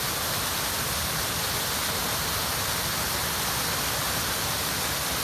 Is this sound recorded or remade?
recorded